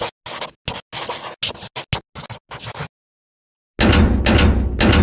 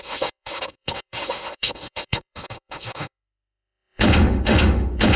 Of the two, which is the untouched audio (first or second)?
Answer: first